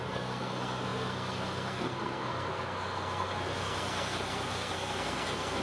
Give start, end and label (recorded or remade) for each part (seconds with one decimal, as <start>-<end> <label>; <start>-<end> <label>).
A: 0.0-5.6 remade